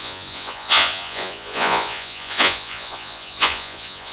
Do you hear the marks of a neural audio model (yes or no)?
yes